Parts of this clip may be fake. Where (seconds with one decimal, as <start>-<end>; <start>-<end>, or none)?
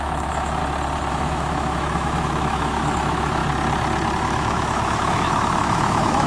0.0-0.6; 1.1-3.4; 4.2-6.3